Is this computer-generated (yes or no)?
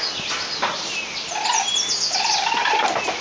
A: no